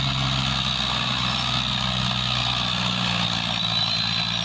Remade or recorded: recorded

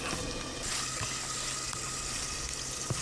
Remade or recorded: recorded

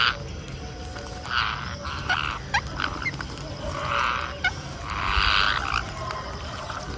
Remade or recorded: recorded